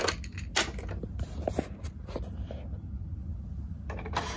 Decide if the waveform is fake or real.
real